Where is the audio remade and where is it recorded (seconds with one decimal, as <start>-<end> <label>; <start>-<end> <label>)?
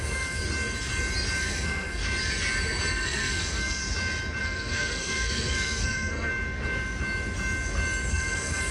0.0-0.4 remade; 0.4-1.4 recorded; 1.4-2.0 remade; 2.0-2.9 recorded; 2.9-3.8 remade; 3.8-4.4 recorded; 4.4-6.3 remade; 6.3-8.1 recorded; 8.1-8.7 remade